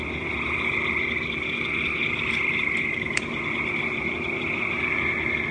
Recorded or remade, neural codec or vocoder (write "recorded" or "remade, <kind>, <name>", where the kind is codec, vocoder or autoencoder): remade, vocoder, BigVGAN v2